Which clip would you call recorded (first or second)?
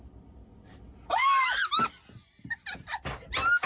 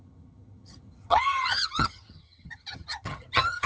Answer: first